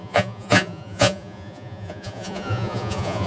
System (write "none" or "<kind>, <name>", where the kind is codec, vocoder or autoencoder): vocoder, Vocos